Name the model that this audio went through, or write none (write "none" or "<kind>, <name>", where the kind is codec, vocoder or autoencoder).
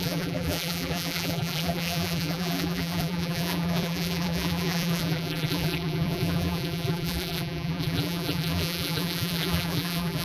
vocoder, BigVGAN v2